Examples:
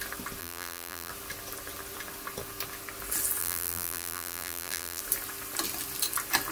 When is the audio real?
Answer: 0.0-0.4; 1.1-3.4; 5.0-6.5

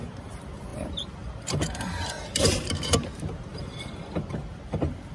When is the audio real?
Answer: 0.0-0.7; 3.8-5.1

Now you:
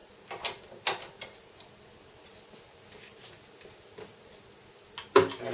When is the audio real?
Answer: 0.0-5.5